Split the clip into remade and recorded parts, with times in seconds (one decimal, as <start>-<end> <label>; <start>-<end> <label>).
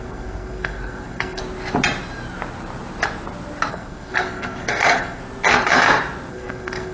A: 0.0-1.4 remade; 1.4-3.7 recorded; 3.7-5.2 remade; 5.2-6.3 recorded; 6.3-6.9 remade